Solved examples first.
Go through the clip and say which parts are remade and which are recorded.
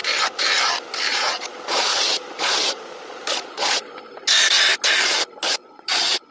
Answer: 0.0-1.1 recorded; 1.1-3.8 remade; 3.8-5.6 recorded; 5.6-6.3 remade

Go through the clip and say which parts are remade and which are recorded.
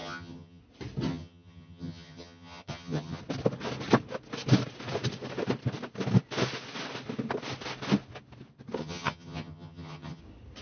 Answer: 0.0-0.6 remade; 0.6-1.1 recorded; 1.1-3.2 remade; 3.2-8.8 recorded; 8.8-10.2 remade; 10.2-10.6 recorded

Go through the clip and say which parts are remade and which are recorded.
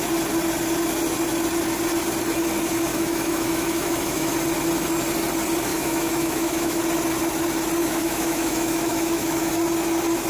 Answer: 0.0-2.9 recorded; 2.9-4.3 remade; 4.3-5.7 recorded; 5.7-6.8 remade; 6.8-7.8 recorded; 7.8-9.5 remade; 9.5-10.3 recorded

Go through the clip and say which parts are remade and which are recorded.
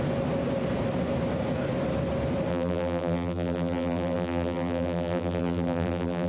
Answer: 0.0-2.5 recorded; 2.5-6.3 remade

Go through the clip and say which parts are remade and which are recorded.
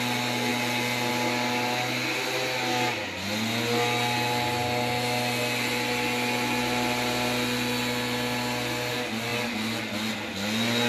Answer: 0.0-10.9 recorded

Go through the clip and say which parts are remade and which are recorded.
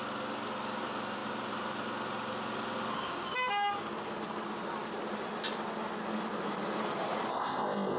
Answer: 0.0-7.3 recorded; 7.3-8.0 remade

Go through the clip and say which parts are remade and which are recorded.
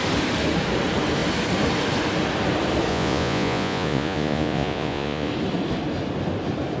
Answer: 0.0-2.9 recorded; 2.9-5.3 remade; 5.3-6.8 recorded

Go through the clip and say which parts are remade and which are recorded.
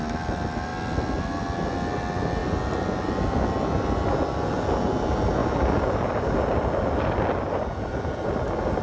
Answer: 0.0-8.8 recorded